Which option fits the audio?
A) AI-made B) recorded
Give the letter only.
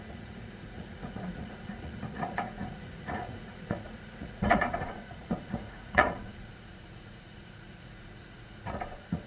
A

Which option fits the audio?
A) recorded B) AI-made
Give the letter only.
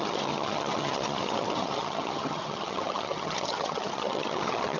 B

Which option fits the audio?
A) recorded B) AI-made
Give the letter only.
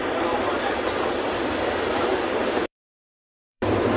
B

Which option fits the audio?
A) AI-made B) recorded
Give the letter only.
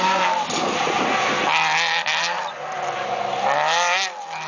B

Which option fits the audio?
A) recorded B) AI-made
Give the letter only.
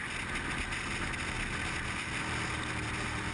A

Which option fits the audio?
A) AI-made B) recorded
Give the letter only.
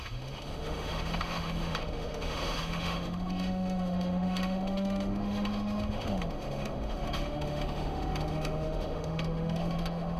A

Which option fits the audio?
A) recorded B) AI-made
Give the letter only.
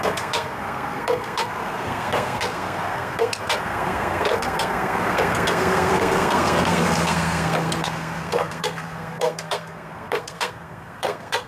B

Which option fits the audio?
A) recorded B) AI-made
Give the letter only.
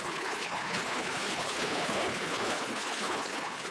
B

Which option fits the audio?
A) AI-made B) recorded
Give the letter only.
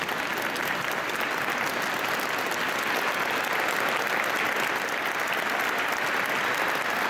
B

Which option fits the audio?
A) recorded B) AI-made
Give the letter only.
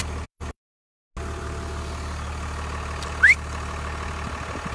A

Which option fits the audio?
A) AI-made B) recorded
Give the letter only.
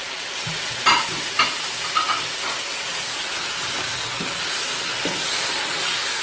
B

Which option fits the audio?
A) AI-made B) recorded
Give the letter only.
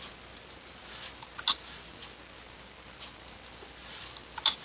B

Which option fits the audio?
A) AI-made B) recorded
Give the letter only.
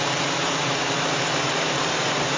A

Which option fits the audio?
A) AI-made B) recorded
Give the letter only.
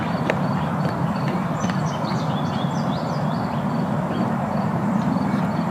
A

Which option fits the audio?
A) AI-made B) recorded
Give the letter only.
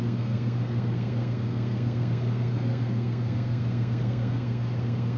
A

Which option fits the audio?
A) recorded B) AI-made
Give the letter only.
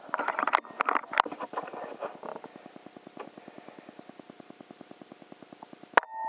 A